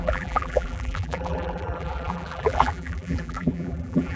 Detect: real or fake fake